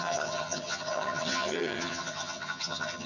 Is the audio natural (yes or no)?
no